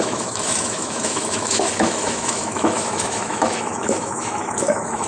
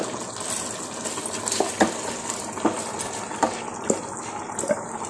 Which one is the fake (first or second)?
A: first